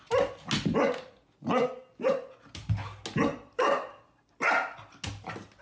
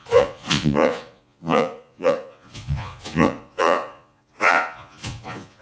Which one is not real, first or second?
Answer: second